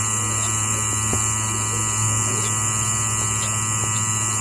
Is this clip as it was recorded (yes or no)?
yes